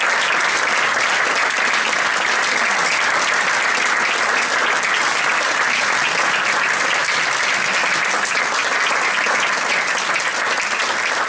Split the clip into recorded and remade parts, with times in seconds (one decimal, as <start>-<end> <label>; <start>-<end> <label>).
0.0-11.3 recorded